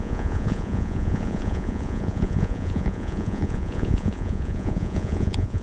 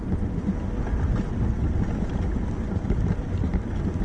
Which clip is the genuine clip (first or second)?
second